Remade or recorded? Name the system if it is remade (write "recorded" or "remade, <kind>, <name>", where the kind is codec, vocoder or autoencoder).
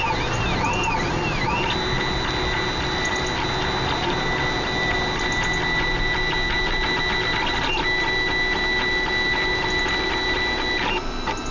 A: recorded